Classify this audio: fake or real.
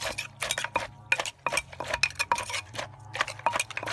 real